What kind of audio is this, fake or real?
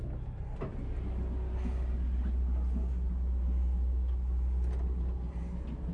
real